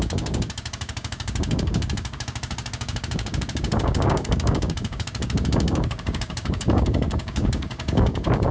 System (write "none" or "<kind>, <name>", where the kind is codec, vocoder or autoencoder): codec, DAC